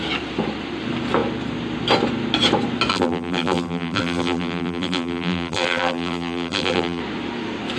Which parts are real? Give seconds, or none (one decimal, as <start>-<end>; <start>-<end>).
0.0-2.9; 7.0-7.8